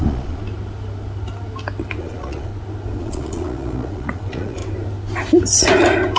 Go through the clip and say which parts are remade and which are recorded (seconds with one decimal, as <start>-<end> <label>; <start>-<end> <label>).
0.0-0.4 remade; 0.4-2.0 recorded; 2.0-2.5 remade; 2.5-3.0 recorded; 3.0-4.6 remade; 4.6-6.2 recorded